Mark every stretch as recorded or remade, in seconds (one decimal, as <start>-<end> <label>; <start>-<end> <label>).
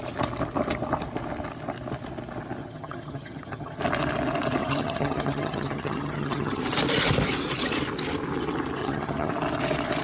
0.0-2.6 recorded; 2.6-3.8 remade; 3.8-4.6 recorded; 4.6-6.6 remade; 6.6-8.8 recorded; 8.8-9.3 remade; 9.3-10.0 recorded